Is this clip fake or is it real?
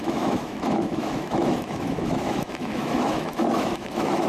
fake